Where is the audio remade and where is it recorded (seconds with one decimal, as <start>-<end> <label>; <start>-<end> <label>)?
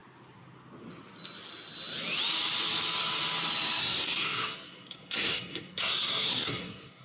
0.0-3.8 recorded; 3.8-7.0 remade